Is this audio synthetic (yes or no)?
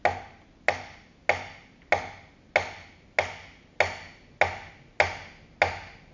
no